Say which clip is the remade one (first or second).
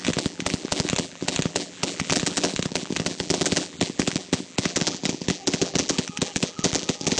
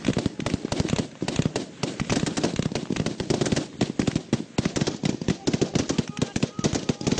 first